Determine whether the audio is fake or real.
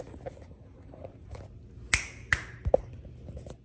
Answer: real